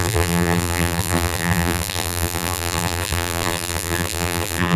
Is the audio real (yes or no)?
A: no